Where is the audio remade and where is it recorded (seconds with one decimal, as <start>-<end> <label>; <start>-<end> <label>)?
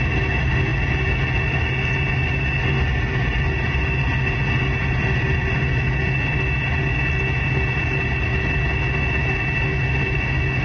0.0-10.6 recorded